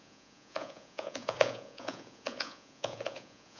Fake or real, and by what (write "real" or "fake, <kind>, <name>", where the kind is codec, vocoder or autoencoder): fake, vocoder, Vocos